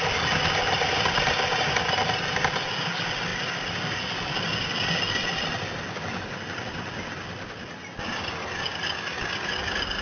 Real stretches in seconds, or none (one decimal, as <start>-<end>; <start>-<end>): 0.0-10.0

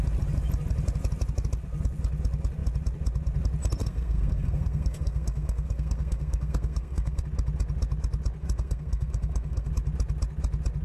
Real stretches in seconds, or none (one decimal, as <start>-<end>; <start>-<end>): 0.0-3.8; 7.2-8.4; 9.7-10.8

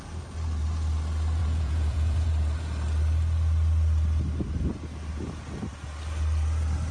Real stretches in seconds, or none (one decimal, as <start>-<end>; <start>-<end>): 0.0-1.4; 2.3-6.9